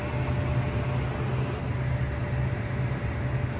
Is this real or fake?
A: real